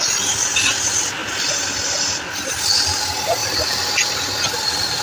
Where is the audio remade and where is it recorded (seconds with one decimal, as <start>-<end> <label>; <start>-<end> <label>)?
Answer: 0.0-3.4 recorded; 3.4-4.1 remade; 4.1-5.0 recorded